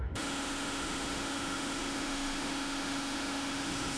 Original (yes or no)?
no